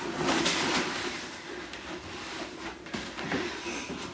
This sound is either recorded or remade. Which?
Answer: recorded